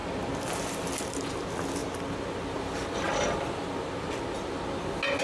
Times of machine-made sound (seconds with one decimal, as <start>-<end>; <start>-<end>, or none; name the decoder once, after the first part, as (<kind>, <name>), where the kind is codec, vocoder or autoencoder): none